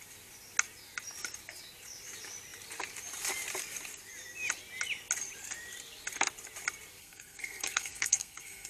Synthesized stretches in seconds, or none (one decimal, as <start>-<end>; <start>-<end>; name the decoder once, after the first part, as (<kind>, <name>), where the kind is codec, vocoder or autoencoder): 7.0-8.7 (codec, SNAC)